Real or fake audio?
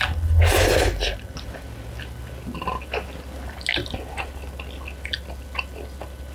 real